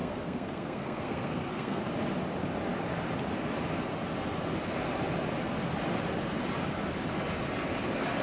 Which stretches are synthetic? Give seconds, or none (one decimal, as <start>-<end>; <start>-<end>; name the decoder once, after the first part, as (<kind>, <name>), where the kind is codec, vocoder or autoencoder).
0.0-1.8 (codec, SNAC)